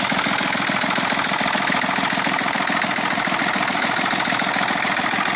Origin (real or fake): real